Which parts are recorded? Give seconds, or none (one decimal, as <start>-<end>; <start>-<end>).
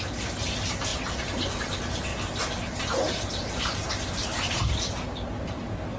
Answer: 2.1-2.8